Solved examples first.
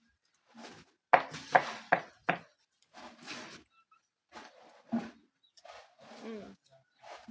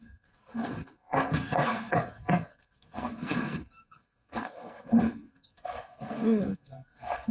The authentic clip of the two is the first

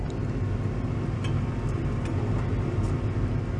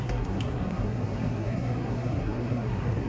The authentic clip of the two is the first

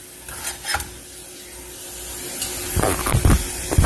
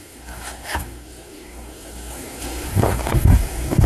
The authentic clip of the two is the first